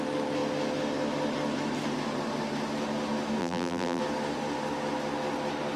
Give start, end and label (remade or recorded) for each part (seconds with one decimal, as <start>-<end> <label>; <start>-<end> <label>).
0.0-3.4 recorded; 3.4-4.0 remade; 4.0-5.8 recorded